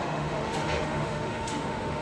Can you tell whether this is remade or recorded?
remade